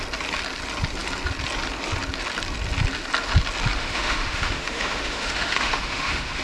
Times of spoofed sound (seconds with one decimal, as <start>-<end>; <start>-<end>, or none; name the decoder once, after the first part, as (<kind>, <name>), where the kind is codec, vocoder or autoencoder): 3.8-6.4 (autoencoder, DAC-VAE)